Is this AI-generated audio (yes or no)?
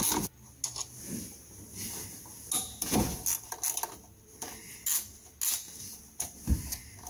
no